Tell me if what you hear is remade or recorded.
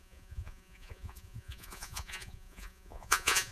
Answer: remade